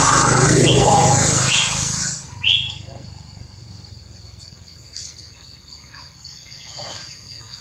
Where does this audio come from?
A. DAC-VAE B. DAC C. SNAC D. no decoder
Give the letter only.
C